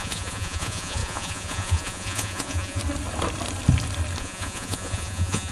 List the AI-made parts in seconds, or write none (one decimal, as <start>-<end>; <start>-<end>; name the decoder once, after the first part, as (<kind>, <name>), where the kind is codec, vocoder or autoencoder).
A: 0.0-2.8 (vocoder, Vocos); 4.2-5.5